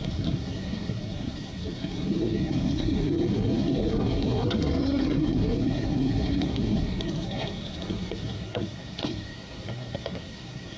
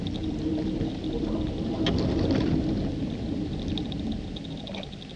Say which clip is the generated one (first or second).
first